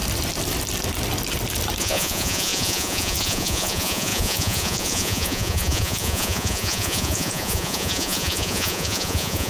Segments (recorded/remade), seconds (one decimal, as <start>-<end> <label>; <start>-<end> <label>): 0.0-1.8 recorded; 1.8-9.5 remade